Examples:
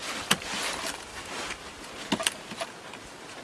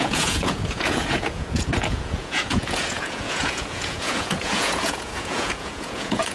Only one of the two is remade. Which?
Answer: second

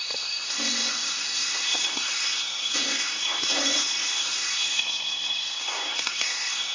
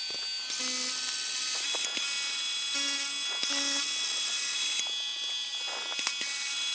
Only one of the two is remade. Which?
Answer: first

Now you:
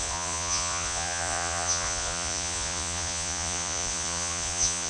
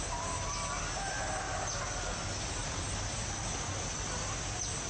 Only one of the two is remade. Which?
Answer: first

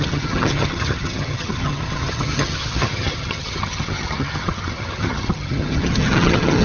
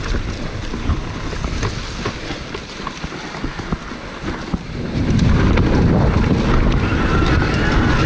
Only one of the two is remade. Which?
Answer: first